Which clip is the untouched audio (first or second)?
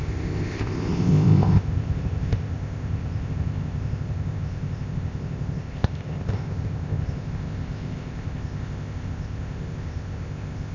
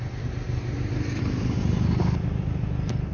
second